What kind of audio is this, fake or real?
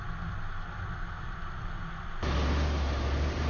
real